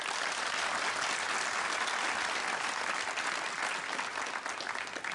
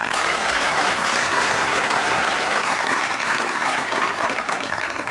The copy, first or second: second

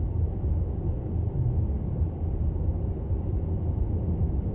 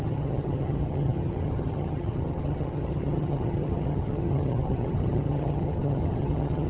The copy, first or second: second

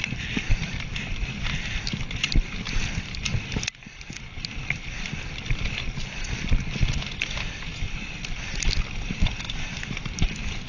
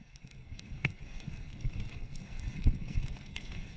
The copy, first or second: second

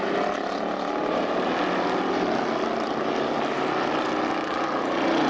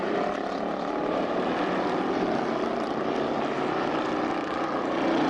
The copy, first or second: second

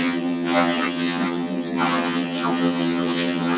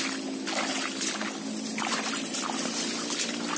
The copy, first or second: first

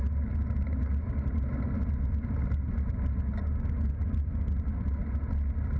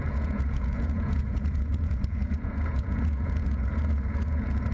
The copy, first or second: second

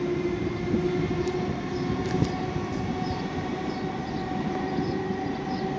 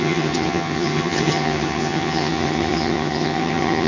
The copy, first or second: second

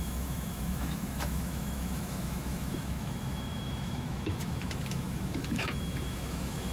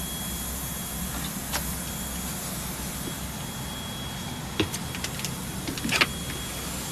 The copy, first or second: first